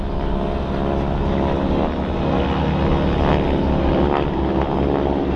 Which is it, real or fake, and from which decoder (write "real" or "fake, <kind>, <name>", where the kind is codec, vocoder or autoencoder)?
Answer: real